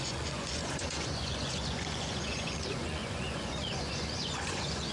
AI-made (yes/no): yes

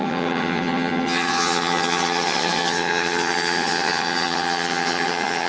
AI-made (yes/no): yes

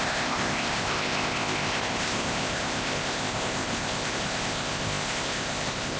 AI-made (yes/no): yes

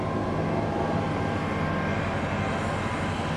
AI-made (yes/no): no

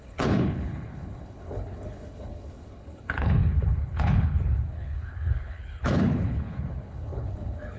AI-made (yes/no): yes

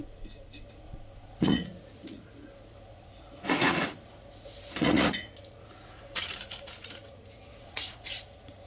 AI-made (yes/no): yes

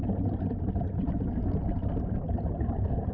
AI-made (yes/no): no